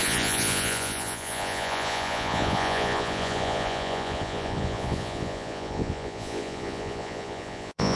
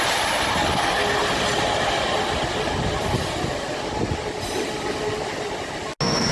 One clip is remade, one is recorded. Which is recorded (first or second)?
second